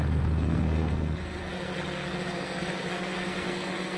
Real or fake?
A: fake